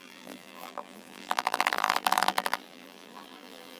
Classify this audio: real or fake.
fake